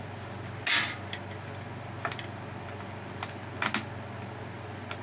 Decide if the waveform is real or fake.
real